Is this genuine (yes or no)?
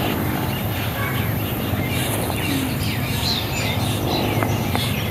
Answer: yes